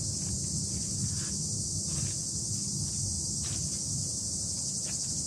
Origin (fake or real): real